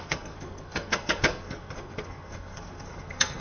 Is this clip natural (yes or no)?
no